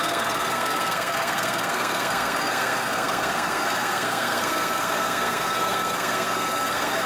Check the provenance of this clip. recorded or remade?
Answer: remade